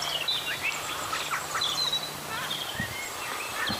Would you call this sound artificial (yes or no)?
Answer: no